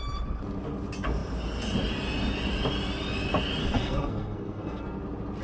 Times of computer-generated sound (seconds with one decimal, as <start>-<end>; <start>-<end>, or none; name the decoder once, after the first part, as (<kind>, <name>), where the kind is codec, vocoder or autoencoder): 3.6-4.8 (codec, SNAC)